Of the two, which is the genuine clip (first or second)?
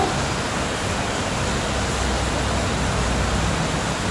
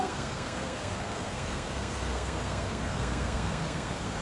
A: first